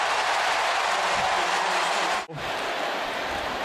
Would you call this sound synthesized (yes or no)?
no